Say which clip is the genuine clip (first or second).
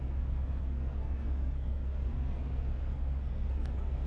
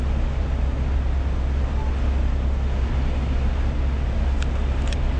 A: second